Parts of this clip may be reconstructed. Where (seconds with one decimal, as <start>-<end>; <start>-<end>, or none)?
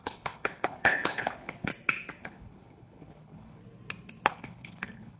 0.0-1.7; 2.2-3.6; 4.3-5.2